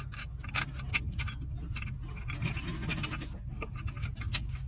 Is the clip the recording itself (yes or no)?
yes